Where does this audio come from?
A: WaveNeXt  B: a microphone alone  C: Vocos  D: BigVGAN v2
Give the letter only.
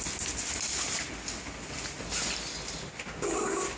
B